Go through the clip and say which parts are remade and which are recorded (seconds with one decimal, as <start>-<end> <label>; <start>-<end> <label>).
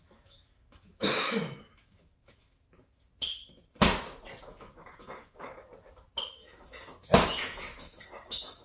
0.0-3.1 remade; 3.1-4.4 recorded; 4.4-5.7 remade; 5.7-6.3 recorded; 6.3-8.6 remade